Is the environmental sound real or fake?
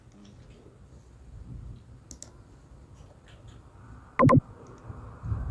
real